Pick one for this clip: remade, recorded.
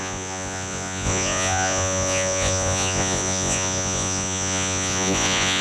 remade